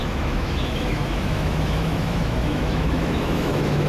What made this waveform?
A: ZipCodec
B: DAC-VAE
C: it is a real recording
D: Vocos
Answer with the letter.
B